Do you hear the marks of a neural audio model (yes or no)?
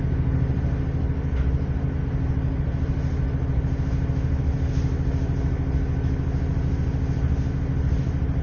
no